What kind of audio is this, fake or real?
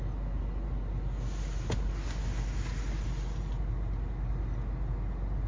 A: real